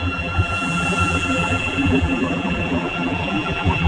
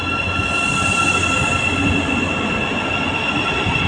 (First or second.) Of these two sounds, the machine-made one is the first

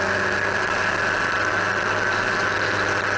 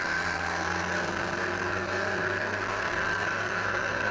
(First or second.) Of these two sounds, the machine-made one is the second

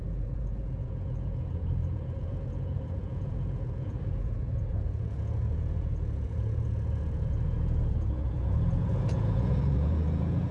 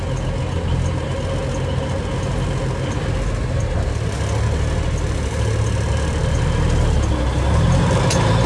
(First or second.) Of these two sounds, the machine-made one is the first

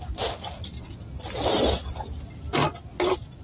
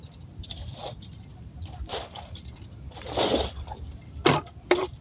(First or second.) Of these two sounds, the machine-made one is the second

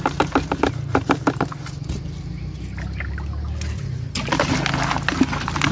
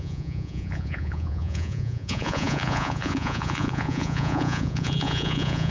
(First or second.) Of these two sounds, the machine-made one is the second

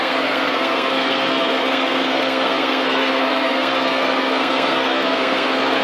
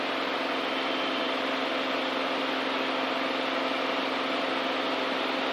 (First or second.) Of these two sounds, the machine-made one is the first